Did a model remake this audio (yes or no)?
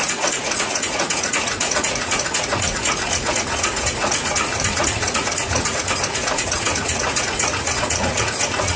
yes